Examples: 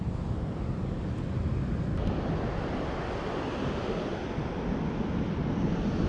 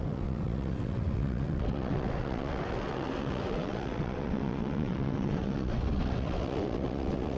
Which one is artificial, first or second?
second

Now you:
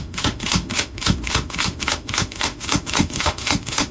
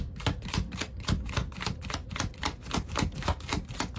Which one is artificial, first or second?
first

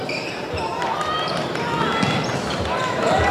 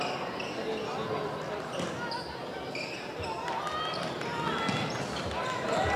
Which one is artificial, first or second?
first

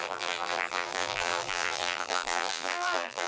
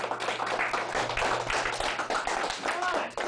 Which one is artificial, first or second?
first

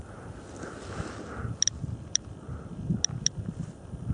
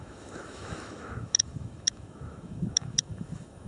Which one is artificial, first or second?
second